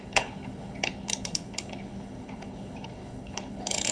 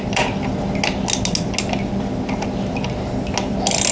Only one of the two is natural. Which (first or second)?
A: second